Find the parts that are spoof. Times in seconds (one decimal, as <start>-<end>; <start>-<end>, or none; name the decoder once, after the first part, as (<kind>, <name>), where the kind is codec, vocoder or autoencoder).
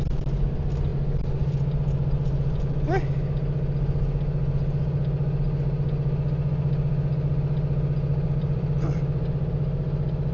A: 8.1-9.5 (vocoder, BigVGAN v2)